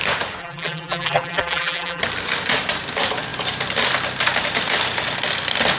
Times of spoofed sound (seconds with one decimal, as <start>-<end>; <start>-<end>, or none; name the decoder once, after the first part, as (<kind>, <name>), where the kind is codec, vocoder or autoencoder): 0.4-2.0 (vocoder, BigVGAN v2)